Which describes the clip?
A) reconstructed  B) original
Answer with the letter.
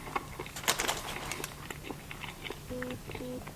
B